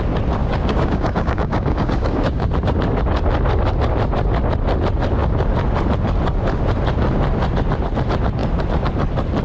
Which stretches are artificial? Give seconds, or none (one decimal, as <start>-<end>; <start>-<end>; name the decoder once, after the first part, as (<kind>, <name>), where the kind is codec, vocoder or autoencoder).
0.4-2.5 (codec, DAC)